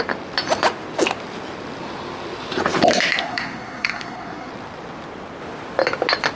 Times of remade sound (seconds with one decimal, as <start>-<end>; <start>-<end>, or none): 3.2-4.5